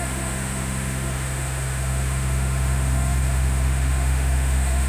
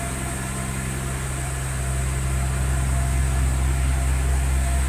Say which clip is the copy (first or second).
first